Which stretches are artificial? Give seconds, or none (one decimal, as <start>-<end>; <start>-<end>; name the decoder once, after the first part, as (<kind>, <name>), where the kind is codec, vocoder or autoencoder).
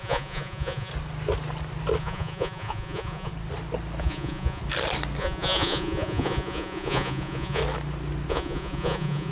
0.0-0.9 (vocoder, Vocos); 2.0-3.3; 4.0-4.6; 5.2-7.6; 8.3-9.3